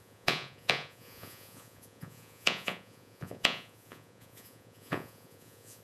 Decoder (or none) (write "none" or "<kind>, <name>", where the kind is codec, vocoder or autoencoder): vocoder, Vocos